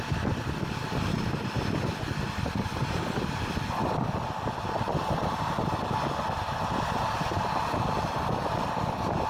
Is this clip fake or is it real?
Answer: real